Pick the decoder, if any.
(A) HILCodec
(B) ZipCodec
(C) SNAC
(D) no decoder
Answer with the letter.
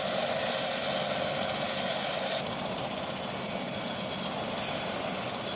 D